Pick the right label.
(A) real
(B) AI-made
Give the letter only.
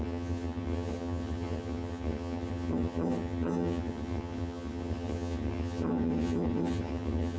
B